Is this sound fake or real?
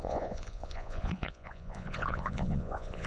fake